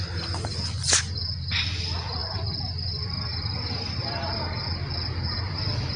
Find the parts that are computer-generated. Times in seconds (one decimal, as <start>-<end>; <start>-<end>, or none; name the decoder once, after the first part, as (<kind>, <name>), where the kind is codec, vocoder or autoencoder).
2.2-4.3 (vocoder, BigVGAN v2)